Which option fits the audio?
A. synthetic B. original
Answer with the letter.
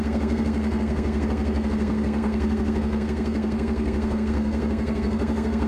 A